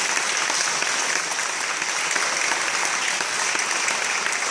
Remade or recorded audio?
recorded